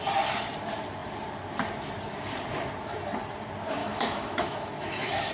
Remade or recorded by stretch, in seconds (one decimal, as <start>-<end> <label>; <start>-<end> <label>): 0.0-3.8 recorded; 3.8-5.3 remade